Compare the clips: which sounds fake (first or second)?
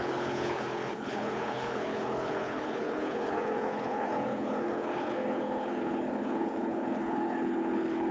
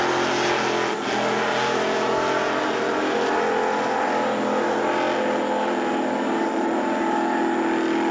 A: first